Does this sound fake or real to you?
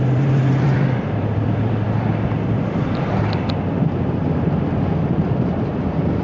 fake